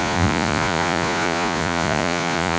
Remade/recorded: remade